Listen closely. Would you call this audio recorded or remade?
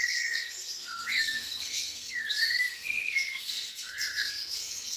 remade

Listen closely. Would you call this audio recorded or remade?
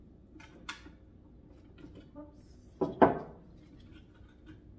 recorded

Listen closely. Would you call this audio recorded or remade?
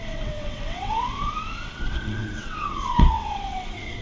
remade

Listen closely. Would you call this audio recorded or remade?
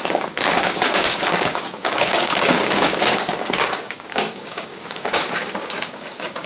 remade